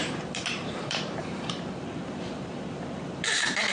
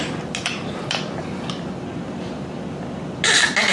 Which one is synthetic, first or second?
first